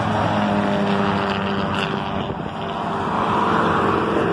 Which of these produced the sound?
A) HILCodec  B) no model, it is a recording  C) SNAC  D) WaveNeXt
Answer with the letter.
B